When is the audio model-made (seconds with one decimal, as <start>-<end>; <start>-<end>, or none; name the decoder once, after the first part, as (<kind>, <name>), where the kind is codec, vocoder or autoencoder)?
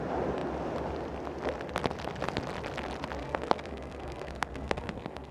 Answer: 3.2-5.3 (codec, SNAC)